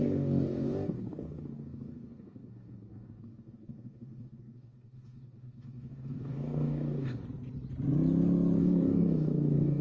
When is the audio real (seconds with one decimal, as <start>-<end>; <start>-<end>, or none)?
7.2-8.6